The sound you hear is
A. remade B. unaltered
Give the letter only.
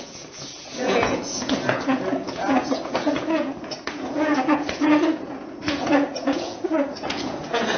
A